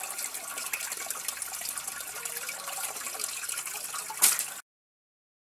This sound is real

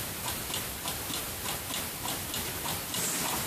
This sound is real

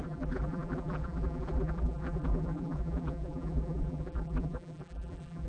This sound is fake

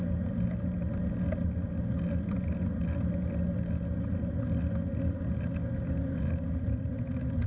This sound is real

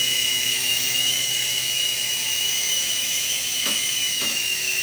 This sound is fake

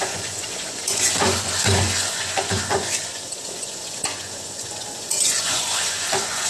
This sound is fake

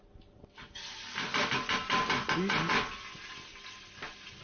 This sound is real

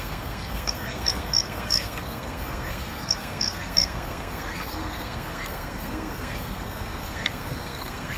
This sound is fake